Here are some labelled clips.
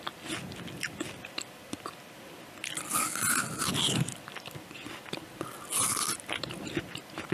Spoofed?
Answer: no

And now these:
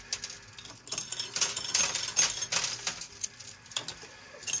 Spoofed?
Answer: no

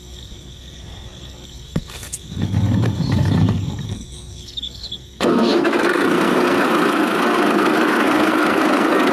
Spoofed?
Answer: yes